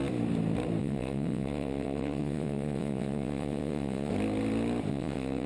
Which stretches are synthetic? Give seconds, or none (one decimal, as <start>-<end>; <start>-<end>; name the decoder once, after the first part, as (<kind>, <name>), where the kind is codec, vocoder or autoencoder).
0.8-4.1 (vocoder, WaveNeXt); 4.9-5.5